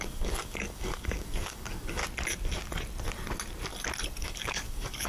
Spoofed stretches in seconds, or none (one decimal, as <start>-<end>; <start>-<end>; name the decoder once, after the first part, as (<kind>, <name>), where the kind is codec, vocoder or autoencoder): 0.0-2.0 (codec, DAC); 4.2-5.1